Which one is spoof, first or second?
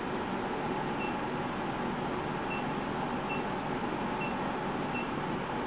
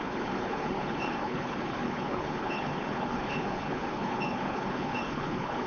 second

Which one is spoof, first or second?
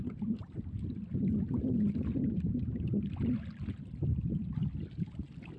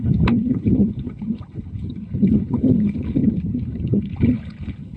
second